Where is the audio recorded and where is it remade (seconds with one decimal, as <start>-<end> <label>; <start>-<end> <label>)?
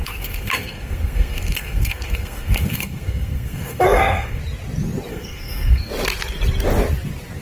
0.0-4.4 remade; 4.4-5.1 recorded; 5.1-5.9 remade; 5.9-7.4 recorded